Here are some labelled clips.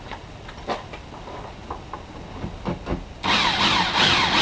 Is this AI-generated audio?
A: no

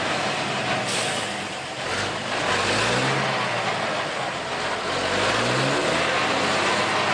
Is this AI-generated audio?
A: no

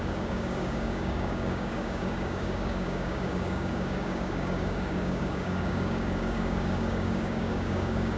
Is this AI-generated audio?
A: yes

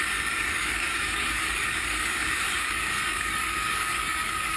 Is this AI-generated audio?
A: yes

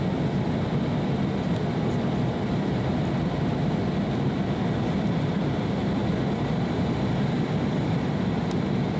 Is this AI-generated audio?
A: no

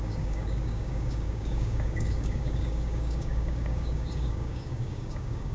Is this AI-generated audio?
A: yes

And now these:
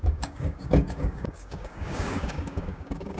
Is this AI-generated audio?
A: yes